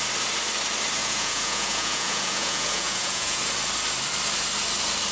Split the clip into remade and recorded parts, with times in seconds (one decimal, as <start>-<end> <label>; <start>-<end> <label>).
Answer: 0.0-1.0 recorded; 1.0-3.4 remade; 3.4-5.1 recorded